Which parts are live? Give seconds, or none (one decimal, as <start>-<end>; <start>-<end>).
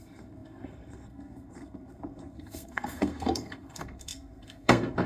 none